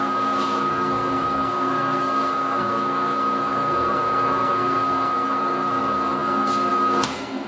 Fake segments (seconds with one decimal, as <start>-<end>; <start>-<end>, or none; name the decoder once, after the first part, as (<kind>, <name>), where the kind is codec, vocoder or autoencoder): 0.0-7.5 (codec, SNAC)